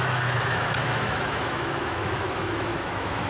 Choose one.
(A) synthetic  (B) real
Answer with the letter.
A